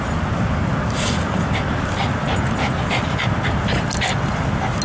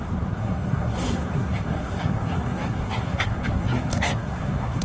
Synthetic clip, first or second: second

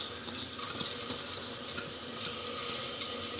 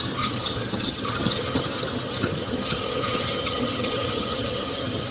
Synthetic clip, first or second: second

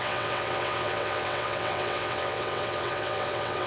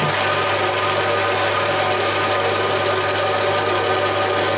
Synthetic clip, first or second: first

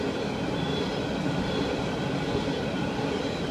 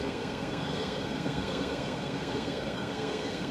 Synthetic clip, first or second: second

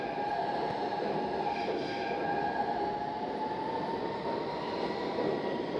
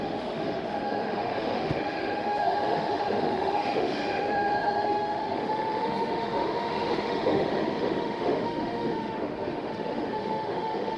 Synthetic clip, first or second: second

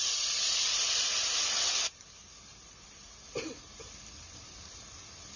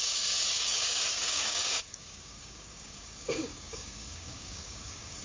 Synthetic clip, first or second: second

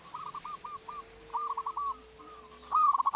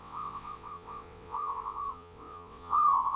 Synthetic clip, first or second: second